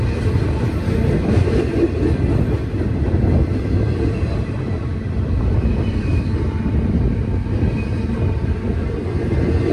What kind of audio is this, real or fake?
real